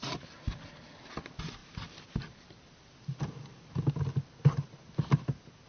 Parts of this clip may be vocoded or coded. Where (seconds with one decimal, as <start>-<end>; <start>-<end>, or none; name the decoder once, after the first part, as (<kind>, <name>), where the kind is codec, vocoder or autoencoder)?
none